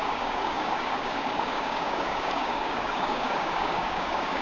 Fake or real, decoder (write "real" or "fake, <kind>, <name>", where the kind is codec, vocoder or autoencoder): fake, codec, DAC